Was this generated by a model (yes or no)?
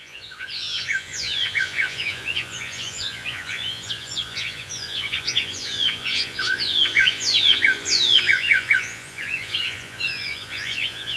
yes